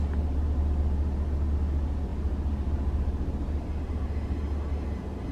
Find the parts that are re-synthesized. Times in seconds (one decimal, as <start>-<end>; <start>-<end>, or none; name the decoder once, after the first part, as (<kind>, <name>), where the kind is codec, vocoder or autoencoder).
none